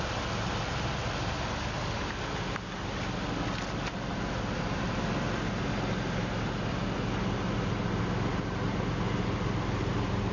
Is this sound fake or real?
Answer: real